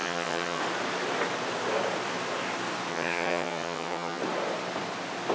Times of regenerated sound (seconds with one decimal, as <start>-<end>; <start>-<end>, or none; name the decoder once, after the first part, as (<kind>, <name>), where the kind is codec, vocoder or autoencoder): 0.0-0.6 (vocoder, HiFi-GAN); 2.9-4.2